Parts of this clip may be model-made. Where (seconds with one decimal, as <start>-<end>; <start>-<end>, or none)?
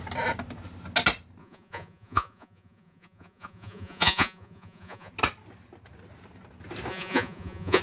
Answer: 1.4-5.1; 6.9-7.8